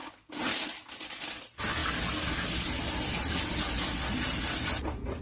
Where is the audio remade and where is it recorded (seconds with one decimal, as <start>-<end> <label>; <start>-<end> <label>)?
0.0-5.2 recorded